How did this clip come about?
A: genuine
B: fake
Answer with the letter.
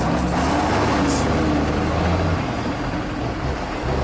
A